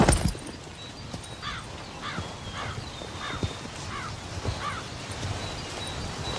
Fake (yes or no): no